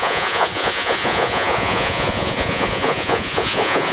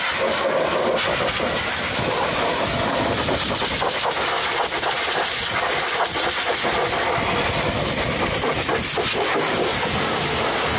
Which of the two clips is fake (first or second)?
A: first